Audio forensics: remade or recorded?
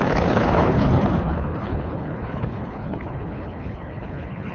remade